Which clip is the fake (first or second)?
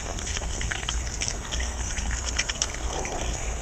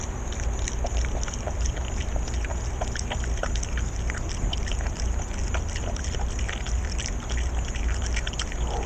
first